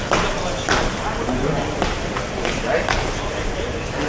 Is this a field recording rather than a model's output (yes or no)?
yes